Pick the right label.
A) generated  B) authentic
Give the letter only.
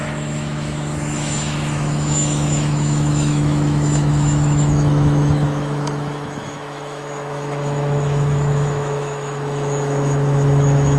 A